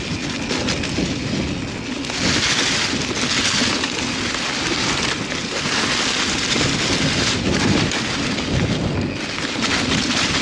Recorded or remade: recorded